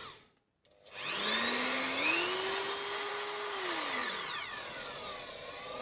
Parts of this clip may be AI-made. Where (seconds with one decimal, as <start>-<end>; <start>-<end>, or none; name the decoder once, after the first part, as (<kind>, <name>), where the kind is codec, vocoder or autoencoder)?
4.0-5.8 (vocoder, Vocos)